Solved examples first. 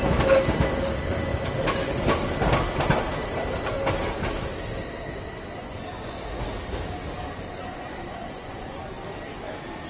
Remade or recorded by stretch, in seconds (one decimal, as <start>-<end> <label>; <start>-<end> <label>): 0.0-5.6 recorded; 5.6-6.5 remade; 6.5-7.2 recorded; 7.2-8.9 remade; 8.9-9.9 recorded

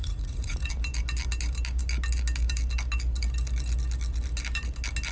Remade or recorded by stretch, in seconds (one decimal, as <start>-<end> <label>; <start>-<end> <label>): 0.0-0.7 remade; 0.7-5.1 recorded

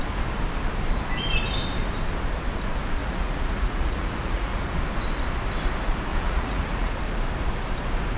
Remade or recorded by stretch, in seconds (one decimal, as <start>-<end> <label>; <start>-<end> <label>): 0.0-3.0 recorded; 3.0-4.6 remade; 4.6-6.1 recorded; 6.1-6.9 remade; 6.9-8.2 recorded

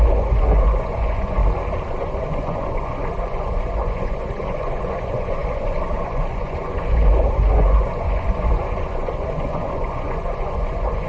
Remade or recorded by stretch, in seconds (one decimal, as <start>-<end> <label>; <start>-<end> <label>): 0.0-1.4 remade; 1.4-2.0 recorded; 2.0-11.1 remade